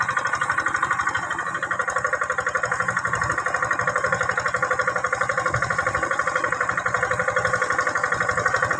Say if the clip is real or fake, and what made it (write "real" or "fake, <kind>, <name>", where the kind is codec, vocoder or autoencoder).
real